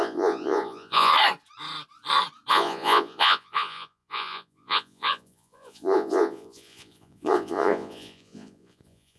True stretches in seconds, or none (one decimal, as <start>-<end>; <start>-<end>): 1.1-2.5